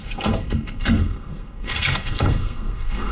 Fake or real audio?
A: fake